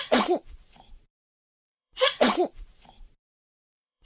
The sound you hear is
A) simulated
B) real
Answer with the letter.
A